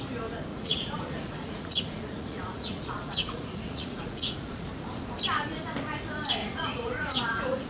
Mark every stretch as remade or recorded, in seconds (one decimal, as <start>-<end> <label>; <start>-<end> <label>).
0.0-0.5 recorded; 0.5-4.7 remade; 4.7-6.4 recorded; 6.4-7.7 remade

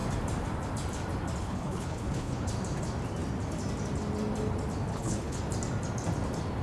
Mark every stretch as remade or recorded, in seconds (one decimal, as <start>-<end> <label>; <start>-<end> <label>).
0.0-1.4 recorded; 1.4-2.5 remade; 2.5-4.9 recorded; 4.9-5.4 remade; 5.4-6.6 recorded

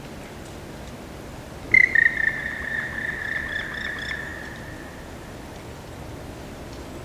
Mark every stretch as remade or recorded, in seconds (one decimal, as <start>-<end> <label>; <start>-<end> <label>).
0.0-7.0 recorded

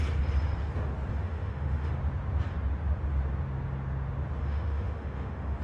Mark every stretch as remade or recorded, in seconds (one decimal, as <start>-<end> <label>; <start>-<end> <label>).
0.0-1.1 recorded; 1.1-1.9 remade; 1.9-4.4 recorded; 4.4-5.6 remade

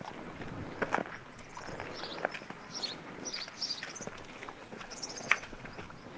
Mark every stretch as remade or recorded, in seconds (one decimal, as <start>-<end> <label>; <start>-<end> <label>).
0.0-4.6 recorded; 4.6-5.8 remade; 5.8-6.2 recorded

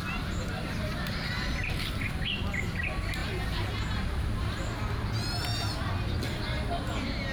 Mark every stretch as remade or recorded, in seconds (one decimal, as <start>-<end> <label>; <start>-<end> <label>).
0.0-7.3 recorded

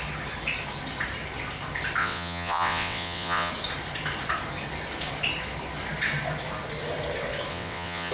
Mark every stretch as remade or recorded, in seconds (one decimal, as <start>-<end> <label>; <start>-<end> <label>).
0.0-2.0 recorded; 2.0-3.5 remade; 3.5-7.5 recorded; 7.5-8.1 remade